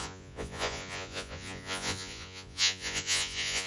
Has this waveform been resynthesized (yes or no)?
yes